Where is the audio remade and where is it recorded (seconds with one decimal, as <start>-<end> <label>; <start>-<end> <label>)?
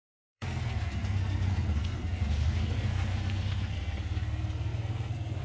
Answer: 0.0-5.4 remade